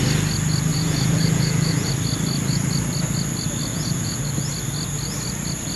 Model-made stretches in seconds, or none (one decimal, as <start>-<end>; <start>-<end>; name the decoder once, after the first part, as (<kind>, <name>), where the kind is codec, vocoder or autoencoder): 0.7-1.9 (vocoder, Vocos); 3.7-4.2